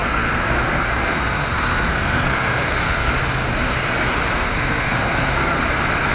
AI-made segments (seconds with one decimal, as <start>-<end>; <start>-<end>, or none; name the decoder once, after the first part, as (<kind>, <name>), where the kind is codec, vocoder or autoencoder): 0.0-0.5 (codec, SNAC); 0.9-3.1; 4.5-5.6